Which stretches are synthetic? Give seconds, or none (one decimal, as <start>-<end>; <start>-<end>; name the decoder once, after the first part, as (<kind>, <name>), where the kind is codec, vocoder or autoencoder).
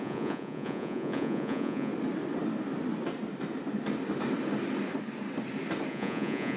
0.0-1.9 (vocoder, Vocos); 5.9-6.6